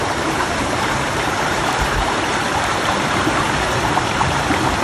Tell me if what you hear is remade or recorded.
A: remade